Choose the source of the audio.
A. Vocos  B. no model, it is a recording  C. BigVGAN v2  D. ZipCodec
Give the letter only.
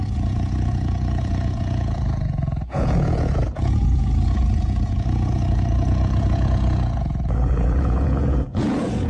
A